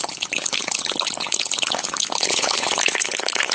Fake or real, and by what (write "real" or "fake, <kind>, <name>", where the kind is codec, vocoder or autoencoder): fake, codec, HILCodec